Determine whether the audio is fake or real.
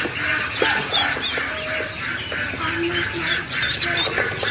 real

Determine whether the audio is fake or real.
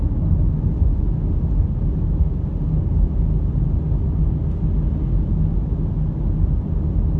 real